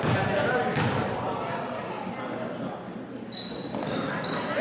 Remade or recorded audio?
recorded